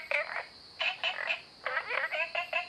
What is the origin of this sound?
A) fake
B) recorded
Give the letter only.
B